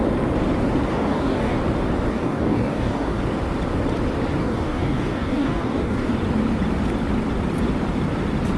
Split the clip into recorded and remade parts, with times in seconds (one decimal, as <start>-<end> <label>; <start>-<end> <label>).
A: 0.0-0.9 recorded; 0.9-1.6 remade; 1.6-2.1 recorded; 2.1-3.2 remade; 3.2-4.4 recorded; 4.4-6.1 remade; 6.1-8.6 recorded